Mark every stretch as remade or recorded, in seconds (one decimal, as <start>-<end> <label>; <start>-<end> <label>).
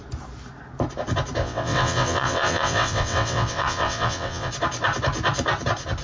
0.0-1.4 recorded; 1.4-4.5 remade; 4.5-6.0 recorded